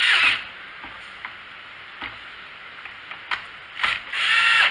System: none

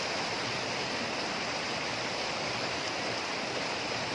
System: none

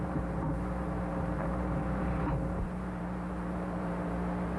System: vocoder, BigVGAN v2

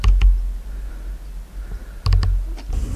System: none